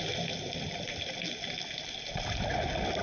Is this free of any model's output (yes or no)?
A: yes